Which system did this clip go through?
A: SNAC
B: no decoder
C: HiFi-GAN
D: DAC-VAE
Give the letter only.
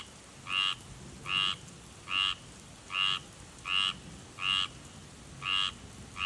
B